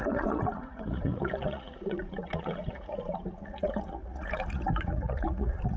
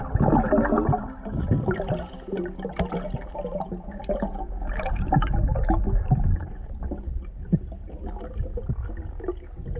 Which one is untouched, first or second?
second